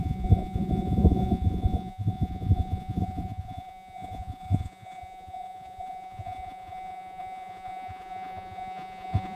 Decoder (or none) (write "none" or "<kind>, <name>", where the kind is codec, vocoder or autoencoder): vocoder, Vocos